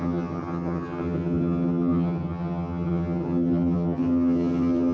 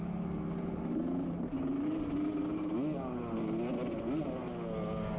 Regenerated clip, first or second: first